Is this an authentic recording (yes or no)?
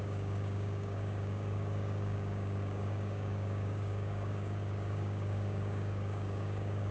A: no